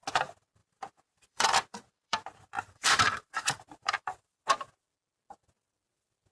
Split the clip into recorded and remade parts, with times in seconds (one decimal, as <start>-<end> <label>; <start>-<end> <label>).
0.0-0.6 recorded; 0.6-4.4 remade; 4.4-6.3 recorded